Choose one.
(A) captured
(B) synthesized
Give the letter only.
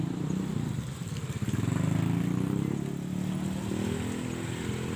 A